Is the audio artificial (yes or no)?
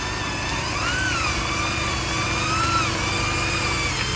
no